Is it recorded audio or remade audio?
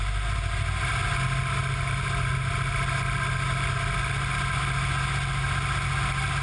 recorded